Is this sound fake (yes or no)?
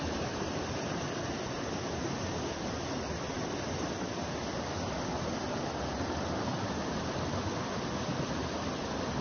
no